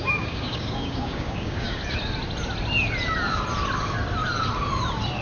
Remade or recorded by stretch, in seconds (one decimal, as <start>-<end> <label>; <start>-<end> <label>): 0.0-1.8 remade; 1.8-5.2 recorded